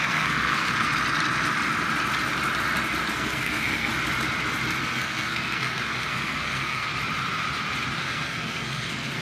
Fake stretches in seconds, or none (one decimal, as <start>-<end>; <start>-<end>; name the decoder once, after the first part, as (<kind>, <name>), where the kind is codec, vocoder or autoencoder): 0.0-0.9 (codec, SNAC); 3.1-3.9; 4.8-6.9; 8.0-9.2